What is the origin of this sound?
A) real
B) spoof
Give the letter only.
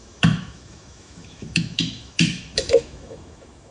B